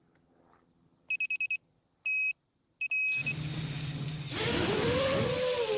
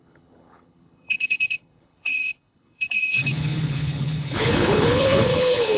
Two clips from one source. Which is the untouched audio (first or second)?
first